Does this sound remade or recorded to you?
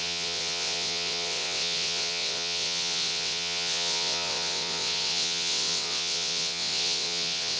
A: remade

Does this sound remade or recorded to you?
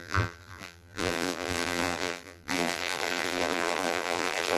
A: remade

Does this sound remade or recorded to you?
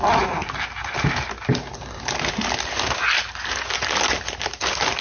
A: recorded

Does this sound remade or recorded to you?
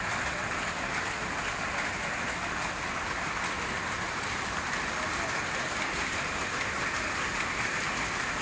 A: recorded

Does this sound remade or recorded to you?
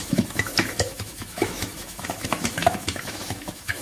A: remade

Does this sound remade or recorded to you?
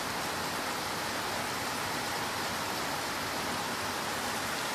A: recorded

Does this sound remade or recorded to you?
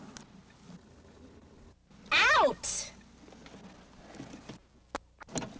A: recorded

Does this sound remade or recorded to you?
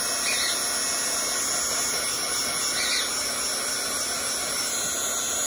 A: recorded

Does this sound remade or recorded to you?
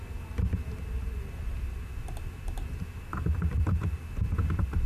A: recorded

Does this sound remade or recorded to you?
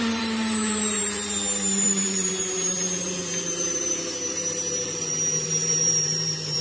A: remade